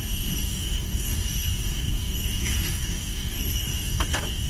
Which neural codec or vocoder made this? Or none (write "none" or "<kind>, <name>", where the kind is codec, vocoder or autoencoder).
codec, DAC